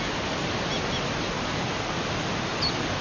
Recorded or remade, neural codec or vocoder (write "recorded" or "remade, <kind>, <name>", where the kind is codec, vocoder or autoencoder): recorded